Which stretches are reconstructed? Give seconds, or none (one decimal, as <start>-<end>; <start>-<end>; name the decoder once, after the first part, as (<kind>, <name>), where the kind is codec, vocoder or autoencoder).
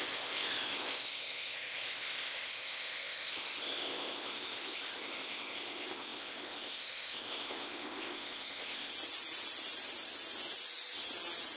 0.0-8.9 (codec, ZipCodec)